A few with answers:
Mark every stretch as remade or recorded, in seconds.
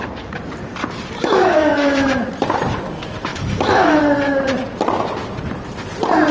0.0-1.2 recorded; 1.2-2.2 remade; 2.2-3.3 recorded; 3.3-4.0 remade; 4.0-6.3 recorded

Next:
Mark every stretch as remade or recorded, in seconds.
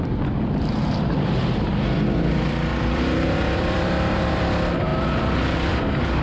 0.0-4.9 remade; 4.9-5.7 recorded; 5.7-6.2 remade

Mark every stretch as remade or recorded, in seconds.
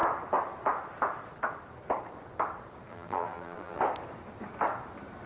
0.0-2.9 recorded; 2.9-3.8 remade; 3.8-5.3 recorded